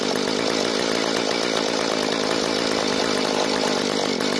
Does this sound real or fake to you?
real